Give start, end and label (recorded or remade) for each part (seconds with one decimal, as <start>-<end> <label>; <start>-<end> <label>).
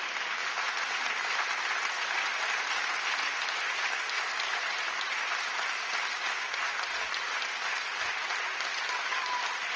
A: 0.0-9.8 recorded